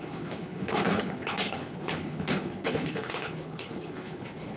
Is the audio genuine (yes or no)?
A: no